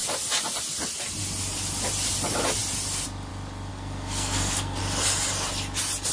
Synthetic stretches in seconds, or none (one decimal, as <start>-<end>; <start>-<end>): 3.7-4.8